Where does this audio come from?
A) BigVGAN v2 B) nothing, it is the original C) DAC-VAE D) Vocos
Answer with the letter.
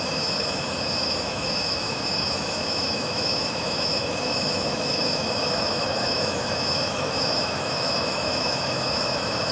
C